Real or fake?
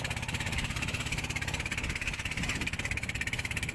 real